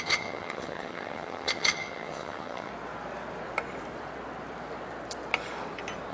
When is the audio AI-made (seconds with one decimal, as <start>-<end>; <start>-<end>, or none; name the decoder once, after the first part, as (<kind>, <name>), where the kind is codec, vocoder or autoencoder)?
0.0-2.7 (vocoder, HiFi-GAN)